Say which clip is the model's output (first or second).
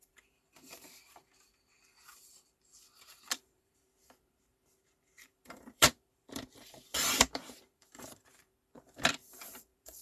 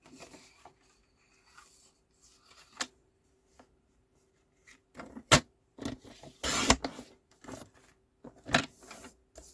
first